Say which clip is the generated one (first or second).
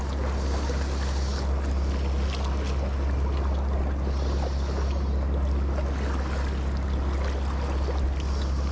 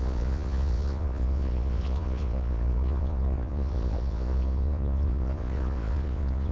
second